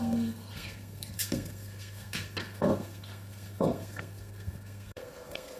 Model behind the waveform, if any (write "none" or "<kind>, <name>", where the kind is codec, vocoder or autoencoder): codec, SNAC